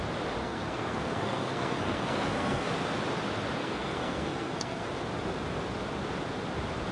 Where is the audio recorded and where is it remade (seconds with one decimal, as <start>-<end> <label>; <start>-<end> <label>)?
0.0-0.4 recorded; 0.4-2.7 remade; 2.7-3.6 recorded; 3.6-4.9 remade; 4.9-6.9 recorded